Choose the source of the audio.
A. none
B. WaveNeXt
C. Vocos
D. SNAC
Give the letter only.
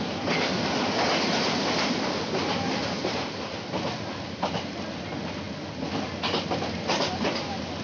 A